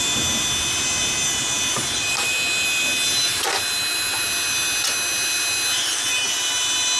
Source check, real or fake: real